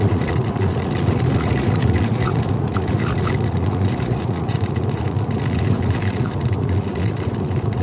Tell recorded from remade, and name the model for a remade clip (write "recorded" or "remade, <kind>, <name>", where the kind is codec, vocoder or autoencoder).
remade, vocoder, Vocos